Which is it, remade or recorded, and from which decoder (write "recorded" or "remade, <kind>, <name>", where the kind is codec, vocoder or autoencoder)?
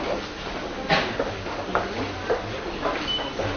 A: recorded